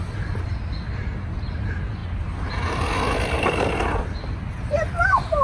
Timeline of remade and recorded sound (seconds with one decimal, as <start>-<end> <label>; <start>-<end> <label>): 0.0-5.4 recorded

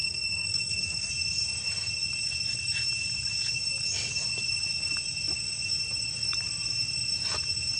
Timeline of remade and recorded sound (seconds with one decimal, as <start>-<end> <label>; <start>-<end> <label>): 0.0-1.1 remade; 1.1-7.8 recorded